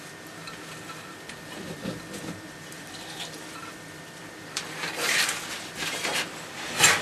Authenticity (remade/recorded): remade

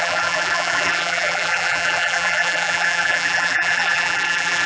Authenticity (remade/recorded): remade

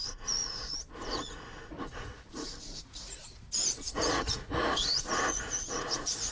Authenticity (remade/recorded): remade